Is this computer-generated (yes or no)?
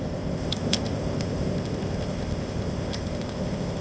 yes